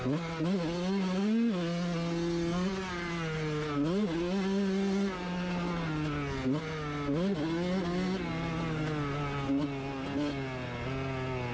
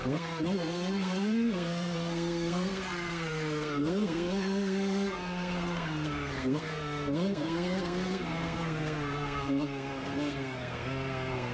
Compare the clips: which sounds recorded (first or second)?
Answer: first